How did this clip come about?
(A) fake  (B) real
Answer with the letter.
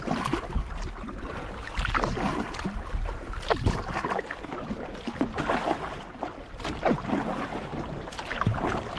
B